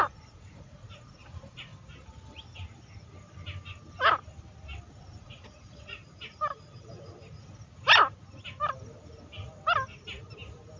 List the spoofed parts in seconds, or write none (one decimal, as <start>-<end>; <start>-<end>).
0.0-1.7; 4.9-6.0